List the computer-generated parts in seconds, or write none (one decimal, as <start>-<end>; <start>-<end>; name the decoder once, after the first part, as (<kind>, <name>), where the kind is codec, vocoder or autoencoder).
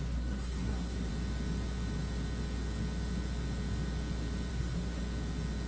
0.0-1.1 (codec, SNAC); 4.5-5.0